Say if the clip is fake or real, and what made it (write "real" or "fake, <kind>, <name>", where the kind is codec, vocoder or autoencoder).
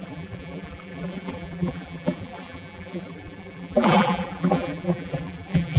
fake, vocoder, BigVGAN v2